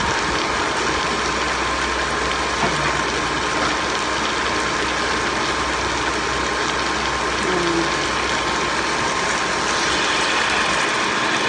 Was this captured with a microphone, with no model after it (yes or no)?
yes